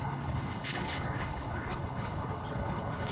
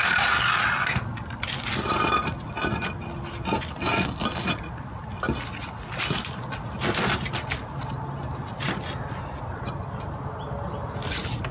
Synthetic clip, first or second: first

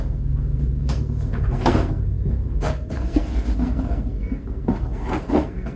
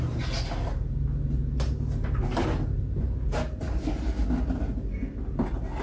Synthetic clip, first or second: first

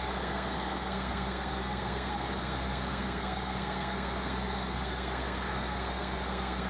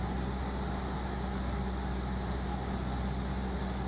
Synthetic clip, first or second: first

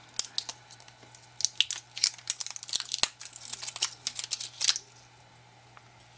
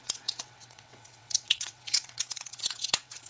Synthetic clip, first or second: second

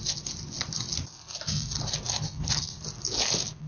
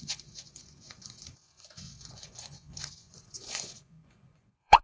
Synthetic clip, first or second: second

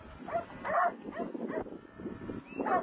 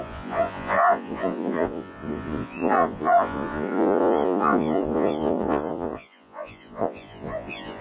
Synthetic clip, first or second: second